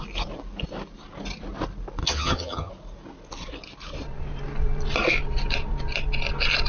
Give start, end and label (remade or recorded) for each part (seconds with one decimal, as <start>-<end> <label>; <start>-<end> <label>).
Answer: 0.0-2.0 recorded; 2.0-2.7 remade; 2.7-6.7 recorded